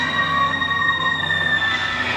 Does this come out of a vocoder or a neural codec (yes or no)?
yes